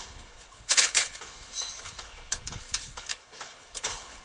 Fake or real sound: fake